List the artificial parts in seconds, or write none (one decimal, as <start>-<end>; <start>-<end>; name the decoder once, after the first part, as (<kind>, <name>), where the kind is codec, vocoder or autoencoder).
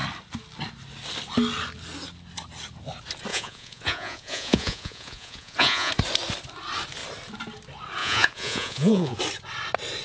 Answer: 3.3-5.9 (vocoder, Vocos); 8.0-9.2